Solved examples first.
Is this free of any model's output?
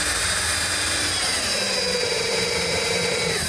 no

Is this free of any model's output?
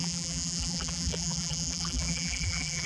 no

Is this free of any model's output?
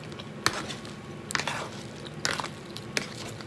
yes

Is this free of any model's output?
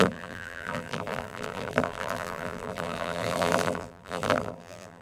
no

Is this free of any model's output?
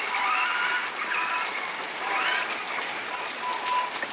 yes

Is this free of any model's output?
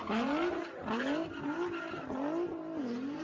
yes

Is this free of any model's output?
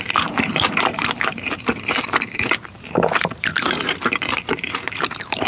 no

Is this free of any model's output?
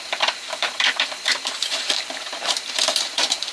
no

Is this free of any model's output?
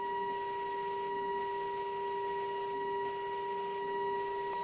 yes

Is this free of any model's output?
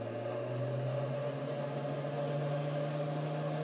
yes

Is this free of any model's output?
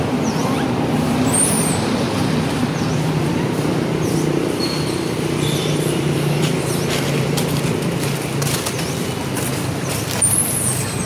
no